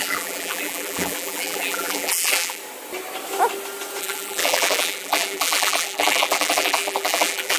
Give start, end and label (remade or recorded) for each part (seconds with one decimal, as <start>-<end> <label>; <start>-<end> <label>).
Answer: 0.0-2.6 remade; 2.6-4.0 recorded; 4.0-7.6 remade